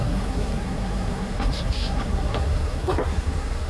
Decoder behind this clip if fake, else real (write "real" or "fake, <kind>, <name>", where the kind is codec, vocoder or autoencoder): fake, codec, SNAC